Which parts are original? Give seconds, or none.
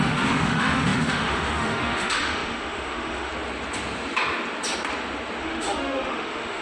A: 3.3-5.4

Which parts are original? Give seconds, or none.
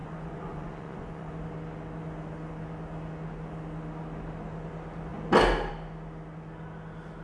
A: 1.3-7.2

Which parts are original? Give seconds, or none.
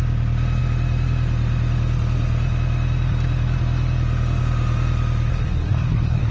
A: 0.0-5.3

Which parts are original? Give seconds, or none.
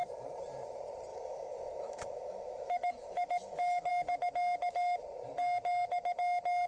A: 0.0-1.1; 3.9-6.7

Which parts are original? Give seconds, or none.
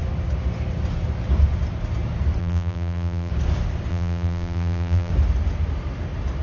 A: 0.0-2.4; 3.3-3.9; 5.1-6.4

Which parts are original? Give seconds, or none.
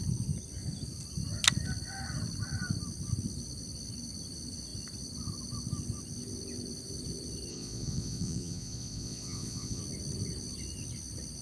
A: 0.0-7.5; 9.8-11.4